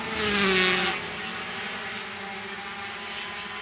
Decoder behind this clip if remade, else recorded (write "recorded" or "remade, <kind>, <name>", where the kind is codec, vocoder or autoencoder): recorded